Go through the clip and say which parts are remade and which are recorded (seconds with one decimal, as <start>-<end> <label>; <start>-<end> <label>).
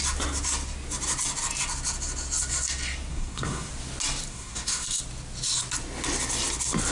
0.0-3.1 recorded; 3.1-3.7 remade; 3.7-4.3 recorded; 4.3-5.0 remade; 5.0-6.9 recorded